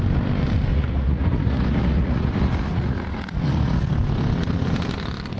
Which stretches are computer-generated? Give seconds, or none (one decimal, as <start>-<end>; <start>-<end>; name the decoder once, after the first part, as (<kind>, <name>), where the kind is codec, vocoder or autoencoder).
0.7-3.9 (vocoder, Vocos)